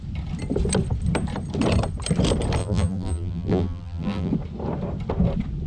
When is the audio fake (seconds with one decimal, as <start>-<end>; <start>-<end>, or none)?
2.6-4.3

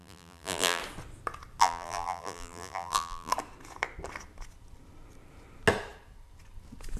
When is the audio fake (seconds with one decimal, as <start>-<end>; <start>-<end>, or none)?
0.0-0.8; 1.6-3.3

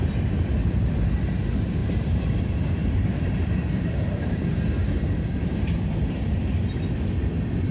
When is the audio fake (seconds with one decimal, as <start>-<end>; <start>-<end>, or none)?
1.8-2.3; 2.8-6.2

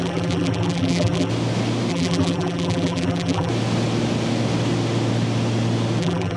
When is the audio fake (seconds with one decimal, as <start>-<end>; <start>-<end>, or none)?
0.0-1.3; 1.9-3.5; 6.0-6.4

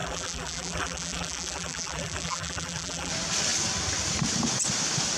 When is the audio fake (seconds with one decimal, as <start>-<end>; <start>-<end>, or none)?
0.0-3.1

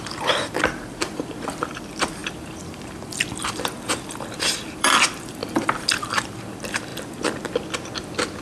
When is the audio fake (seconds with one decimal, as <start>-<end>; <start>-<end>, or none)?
0.0-6.9

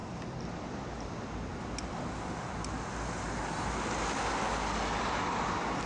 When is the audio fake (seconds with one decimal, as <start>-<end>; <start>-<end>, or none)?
none